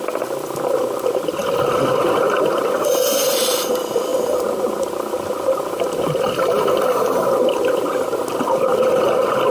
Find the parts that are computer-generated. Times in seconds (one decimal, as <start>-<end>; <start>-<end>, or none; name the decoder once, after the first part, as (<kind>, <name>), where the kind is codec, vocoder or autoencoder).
none